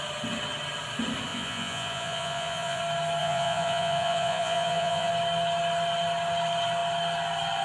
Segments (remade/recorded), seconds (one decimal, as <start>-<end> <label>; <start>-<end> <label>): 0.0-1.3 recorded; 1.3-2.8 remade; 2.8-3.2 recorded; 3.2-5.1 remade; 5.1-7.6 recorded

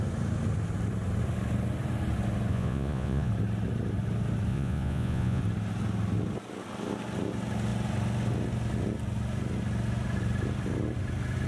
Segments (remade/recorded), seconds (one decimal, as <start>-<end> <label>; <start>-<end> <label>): 0.0-2.5 recorded; 2.5-3.3 remade; 3.3-4.5 recorded; 4.5-5.4 remade; 5.4-11.5 recorded

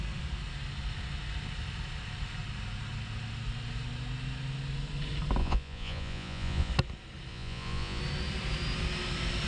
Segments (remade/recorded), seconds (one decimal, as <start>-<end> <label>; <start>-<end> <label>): 0.0-5.4 recorded; 5.4-6.7 remade; 6.7-7.3 recorded; 7.3-8.0 remade; 8.0-9.5 recorded

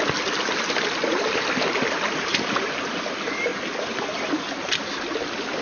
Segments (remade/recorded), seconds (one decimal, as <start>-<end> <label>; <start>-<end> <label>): 0.0-5.6 recorded